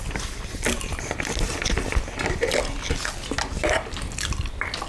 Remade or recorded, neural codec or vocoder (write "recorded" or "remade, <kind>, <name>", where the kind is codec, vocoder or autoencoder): recorded